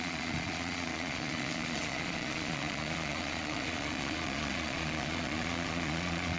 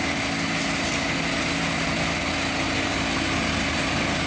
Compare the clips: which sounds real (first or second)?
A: second